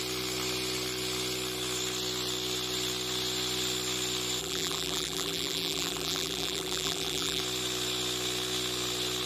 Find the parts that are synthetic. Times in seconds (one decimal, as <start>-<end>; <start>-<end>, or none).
4.4-7.4